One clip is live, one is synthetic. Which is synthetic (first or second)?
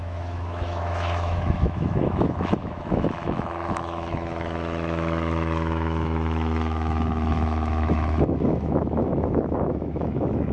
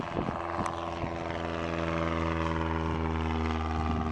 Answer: first